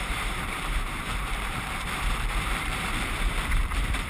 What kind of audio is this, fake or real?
fake